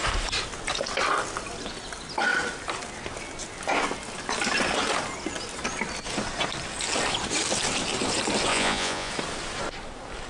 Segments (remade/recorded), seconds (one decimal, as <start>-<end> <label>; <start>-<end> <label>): 0.0-8.5 recorded; 8.5-9.1 remade; 9.1-10.3 recorded